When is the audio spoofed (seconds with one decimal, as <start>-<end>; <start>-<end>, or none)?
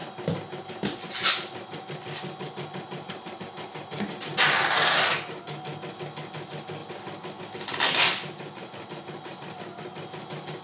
none